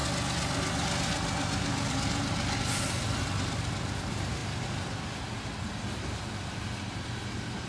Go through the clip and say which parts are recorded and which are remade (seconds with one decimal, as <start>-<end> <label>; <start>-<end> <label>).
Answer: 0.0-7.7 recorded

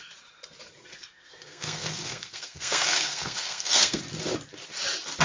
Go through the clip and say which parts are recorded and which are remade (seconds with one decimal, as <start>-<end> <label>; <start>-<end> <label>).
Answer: 0.0-0.9 recorded; 0.9-4.0 remade; 4.0-5.2 recorded

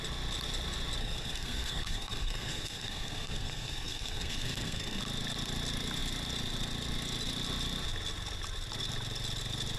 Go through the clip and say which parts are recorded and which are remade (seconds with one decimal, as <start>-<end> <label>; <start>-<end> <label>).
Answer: 0.0-1.0 recorded; 1.0-5.0 remade; 5.0-9.8 recorded